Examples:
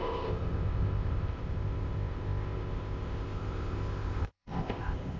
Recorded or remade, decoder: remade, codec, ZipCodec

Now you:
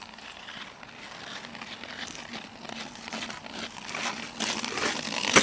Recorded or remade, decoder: recorded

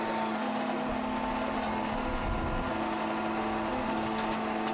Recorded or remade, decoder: recorded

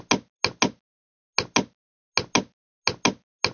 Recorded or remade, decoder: recorded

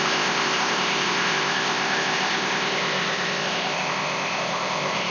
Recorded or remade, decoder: remade, codec, ZipCodec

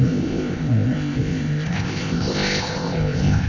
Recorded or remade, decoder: remade, codec, ZipCodec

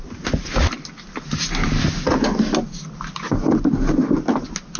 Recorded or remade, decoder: recorded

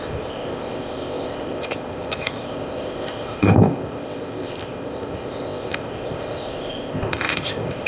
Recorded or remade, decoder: remade, codec, ZipCodec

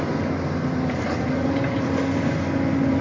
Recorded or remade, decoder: recorded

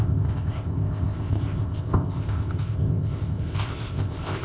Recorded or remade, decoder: remade, codec, ZipCodec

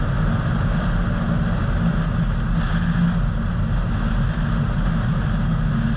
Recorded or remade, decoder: recorded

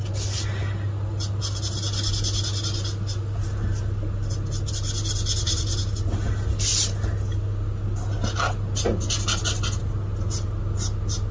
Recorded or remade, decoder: recorded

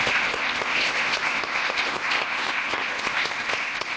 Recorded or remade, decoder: remade, codec, ZipCodec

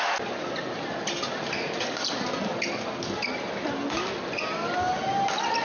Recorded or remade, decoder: recorded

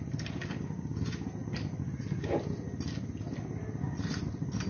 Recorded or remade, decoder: recorded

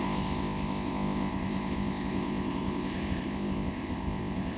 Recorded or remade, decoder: remade, codec, ZipCodec